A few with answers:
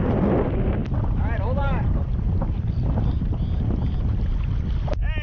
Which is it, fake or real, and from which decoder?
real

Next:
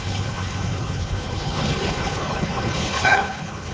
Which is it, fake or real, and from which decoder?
fake, codec, HILCodec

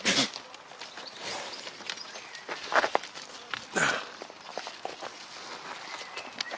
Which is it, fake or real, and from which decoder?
real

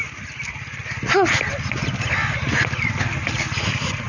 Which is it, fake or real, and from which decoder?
real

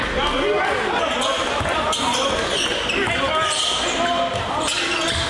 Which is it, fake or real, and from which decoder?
real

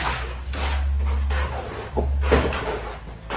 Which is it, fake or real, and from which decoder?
real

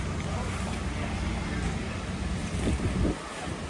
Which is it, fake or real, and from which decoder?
real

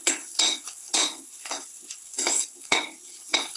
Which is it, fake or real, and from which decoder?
fake, codec, HILCodec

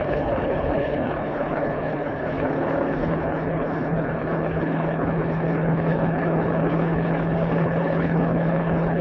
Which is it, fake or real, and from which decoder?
fake, codec, HILCodec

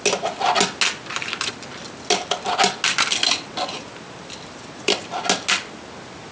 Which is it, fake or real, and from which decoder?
real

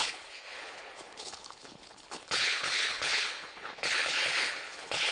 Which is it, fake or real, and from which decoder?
fake, codec, HILCodec